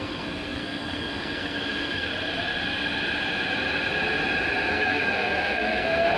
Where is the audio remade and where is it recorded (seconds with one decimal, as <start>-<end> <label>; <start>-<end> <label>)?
0.0-2.1 remade; 2.1-4.7 recorded; 4.7-6.2 remade